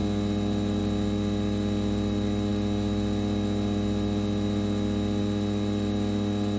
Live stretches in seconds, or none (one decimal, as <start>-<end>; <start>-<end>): 0.0-6.6